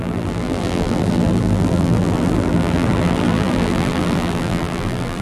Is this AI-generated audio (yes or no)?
yes